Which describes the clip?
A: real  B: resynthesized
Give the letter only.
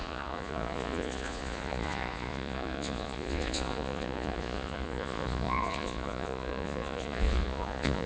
B